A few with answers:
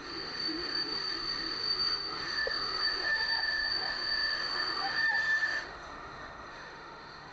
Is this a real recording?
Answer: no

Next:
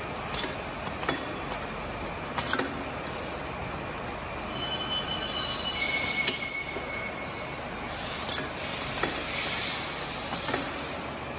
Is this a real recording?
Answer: yes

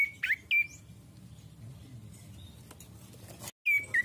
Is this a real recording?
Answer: yes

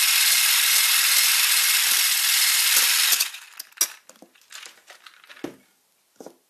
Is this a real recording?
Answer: yes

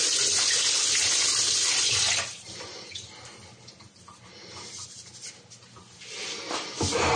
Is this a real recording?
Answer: yes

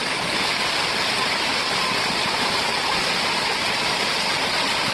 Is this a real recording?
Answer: yes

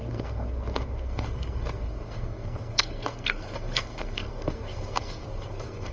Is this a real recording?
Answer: no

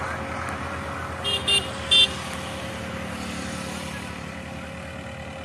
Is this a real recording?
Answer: yes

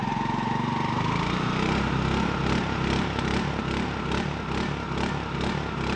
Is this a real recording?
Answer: yes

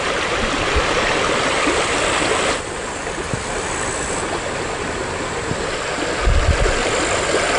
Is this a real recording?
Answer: yes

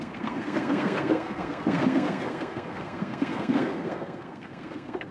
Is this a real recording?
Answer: no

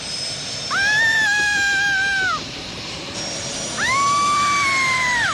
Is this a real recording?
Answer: no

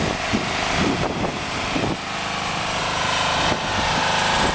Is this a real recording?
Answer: yes